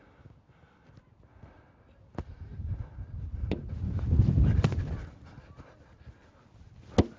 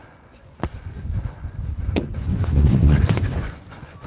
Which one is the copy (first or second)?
second